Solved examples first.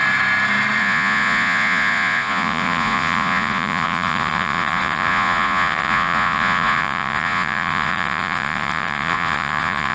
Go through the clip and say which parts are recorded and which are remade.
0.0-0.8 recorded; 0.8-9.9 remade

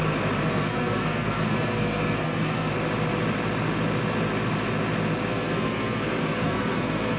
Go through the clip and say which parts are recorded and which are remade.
0.0-0.5 recorded; 0.5-2.7 remade; 2.7-5.3 recorded; 5.3-7.2 remade